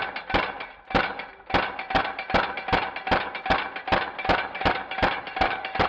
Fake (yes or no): no